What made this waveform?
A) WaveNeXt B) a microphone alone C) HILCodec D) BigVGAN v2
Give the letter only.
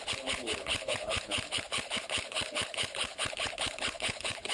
C